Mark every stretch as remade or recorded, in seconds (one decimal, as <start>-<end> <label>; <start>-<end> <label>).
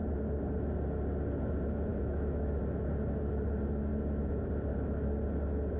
0.0-1.9 recorded; 1.9-2.6 remade; 2.6-5.8 recorded